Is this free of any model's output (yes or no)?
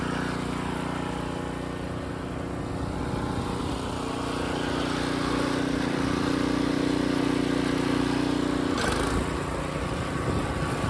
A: yes